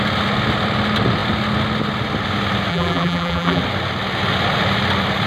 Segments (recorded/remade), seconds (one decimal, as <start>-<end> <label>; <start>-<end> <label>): 0.0-2.7 recorded; 2.7-3.6 remade; 3.6-5.3 recorded